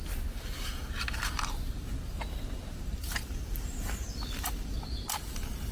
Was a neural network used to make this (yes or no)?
no